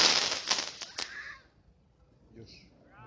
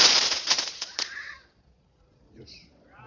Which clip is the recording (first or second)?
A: first